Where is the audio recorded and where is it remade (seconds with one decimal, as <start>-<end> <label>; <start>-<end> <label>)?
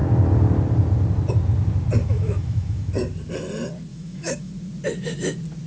0.0-2.0 recorded; 2.0-2.9 remade; 2.9-3.9 recorded; 3.9-4.5 remade; 4.5-5.7 recorded